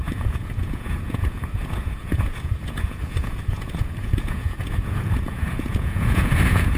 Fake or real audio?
fake